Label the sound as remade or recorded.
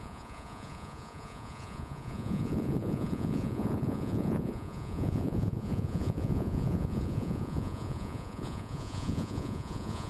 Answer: remade